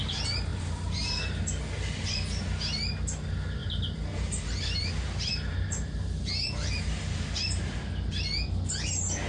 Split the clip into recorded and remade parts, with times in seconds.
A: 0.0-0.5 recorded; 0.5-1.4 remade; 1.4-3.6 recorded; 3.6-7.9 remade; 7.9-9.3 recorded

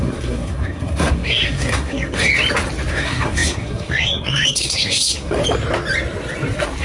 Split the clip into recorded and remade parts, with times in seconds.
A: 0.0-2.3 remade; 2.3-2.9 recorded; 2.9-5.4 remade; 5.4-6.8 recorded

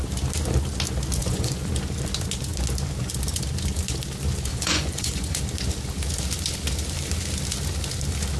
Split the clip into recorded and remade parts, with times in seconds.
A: 0.0-1.2 recorded; 1.2-1.7 remade; 1.7-4.5 recorded; 4.5-5.4 remade; 5.4-8.4 recorded

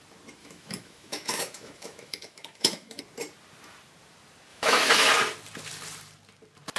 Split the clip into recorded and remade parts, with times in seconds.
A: 0.0-0.4 recorded; 0.4-3.0 remade; 3.0-4.5 recorded; 4.5-5.1 remade; 5.1-6.8 recorded

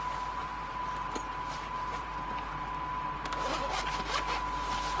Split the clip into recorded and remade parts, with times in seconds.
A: 0.0-0.4 recorded; 0.4-3.3 remade; 3.3-5.0 recorded